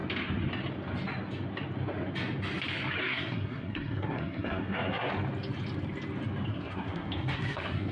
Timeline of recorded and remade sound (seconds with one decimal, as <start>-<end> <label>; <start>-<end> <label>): 0.0-3.0 recorded; 3.0-5.1 remade; 5.1-6.5 recorded; 6.5-7.9 remade